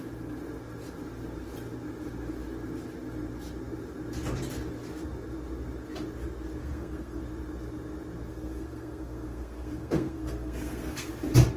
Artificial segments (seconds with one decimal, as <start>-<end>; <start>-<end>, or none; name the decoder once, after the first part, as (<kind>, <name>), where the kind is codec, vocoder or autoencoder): 6.6-7.2 (codec, SNAC); 8.3-11.1